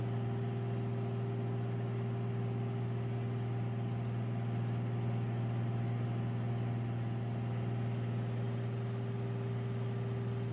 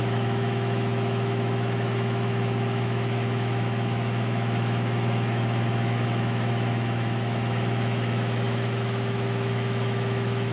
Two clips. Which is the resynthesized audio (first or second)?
second